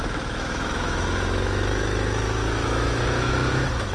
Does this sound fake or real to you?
fake